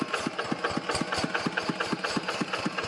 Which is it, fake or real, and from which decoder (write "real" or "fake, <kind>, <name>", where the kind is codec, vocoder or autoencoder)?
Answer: real